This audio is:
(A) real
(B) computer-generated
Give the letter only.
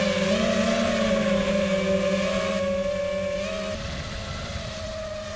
A